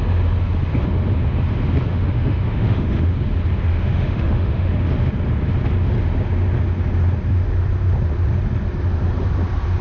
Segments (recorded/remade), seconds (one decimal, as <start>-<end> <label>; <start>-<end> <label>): 0.0-1.9 recorded; 1.9-3.1 remade; 3.1-3.7 recorded; 3.7-4.7 remade; 4.7-9.8 recorded